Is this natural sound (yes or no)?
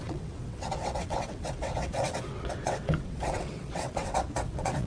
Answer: no